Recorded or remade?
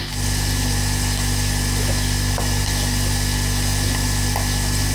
recorded